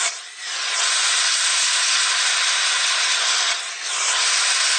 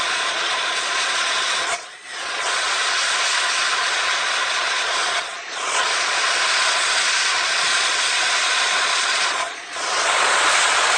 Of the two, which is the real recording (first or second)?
first